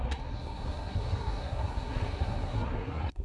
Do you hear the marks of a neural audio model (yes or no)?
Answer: yes